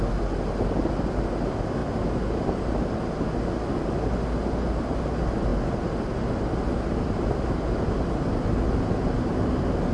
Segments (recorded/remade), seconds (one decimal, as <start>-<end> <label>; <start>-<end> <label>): 0.0-9.9 recorded